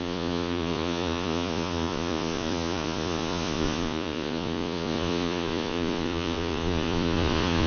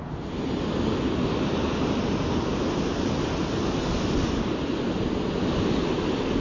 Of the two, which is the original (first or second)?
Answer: second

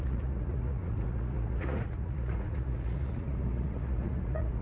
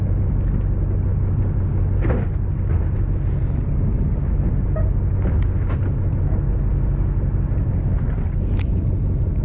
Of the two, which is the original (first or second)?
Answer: second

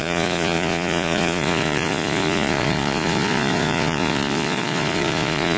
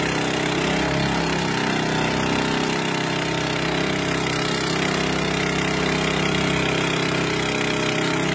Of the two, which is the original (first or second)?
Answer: second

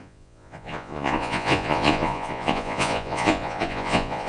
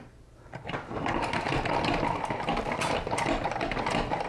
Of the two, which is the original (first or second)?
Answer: second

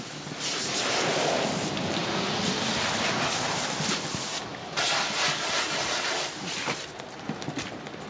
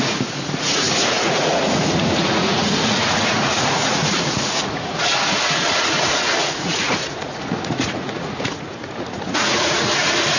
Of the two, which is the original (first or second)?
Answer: first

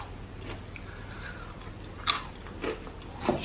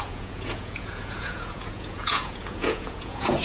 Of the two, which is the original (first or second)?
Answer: first